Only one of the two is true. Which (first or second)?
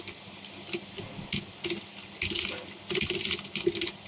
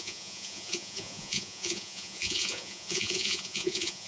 first